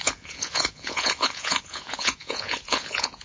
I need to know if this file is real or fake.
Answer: fake